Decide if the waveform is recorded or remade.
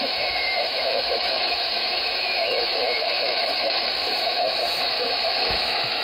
remade